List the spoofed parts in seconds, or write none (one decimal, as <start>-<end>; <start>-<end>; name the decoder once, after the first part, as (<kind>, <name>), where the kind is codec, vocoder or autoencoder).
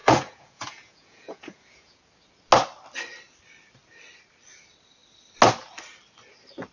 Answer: 0.0-2.0 (vocoder, Vocos)